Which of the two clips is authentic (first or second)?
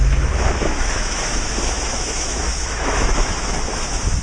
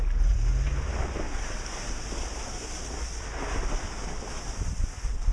second